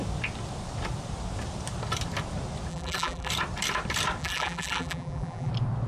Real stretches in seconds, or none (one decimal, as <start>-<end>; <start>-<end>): 0.0-2.7; 3.3-4.2; 5.5-5.9